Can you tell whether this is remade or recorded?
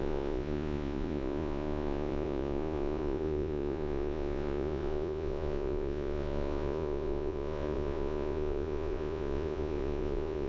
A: remade